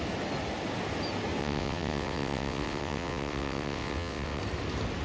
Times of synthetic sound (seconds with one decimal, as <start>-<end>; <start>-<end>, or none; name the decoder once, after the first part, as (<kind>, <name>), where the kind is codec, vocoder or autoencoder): 1.4-4.4 (vocoder, WaveNeXt)